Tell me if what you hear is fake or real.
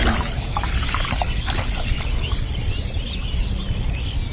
real